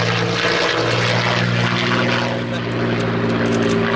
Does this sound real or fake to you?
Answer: real